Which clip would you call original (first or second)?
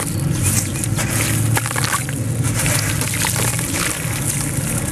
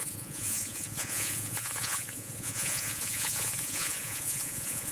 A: first